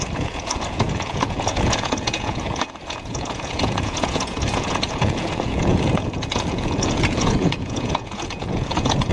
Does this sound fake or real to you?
fake